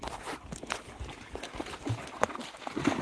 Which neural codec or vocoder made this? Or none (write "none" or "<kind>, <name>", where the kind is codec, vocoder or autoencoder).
none